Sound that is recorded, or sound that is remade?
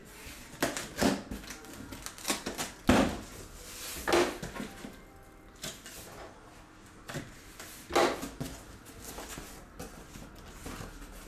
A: recorded